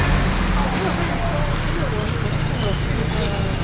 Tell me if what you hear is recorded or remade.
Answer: recorded